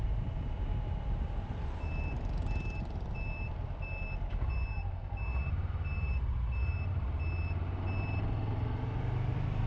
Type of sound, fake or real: real